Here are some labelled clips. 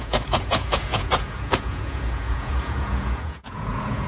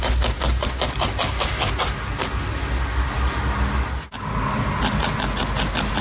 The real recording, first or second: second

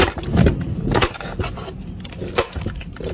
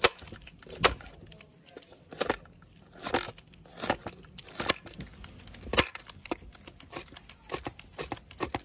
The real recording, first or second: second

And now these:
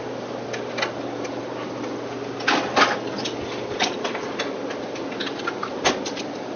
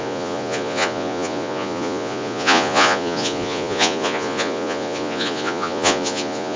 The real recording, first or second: first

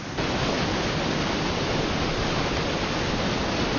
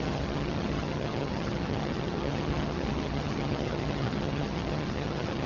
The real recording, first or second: first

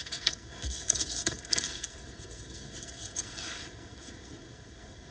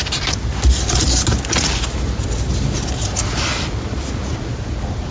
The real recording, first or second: second